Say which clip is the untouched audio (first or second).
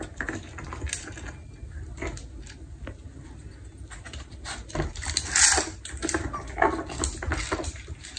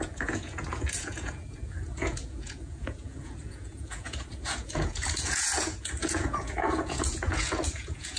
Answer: first